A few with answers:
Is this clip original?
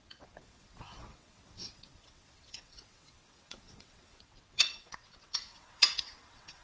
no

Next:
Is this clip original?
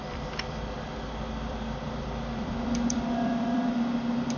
no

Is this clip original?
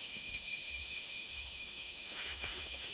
no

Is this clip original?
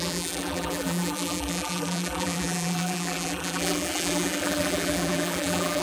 no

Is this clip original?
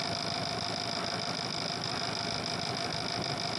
yes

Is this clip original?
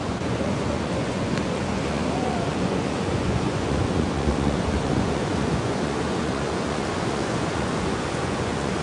no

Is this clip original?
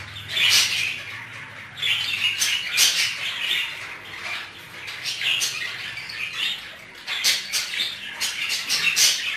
yes